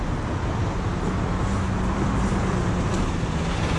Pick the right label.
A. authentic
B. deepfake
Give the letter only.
A